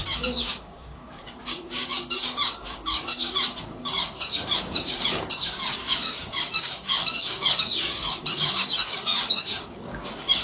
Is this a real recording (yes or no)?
no